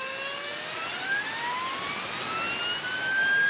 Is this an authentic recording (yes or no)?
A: yes